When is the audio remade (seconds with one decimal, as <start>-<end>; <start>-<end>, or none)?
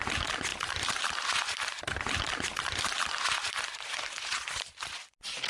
0.5-3.8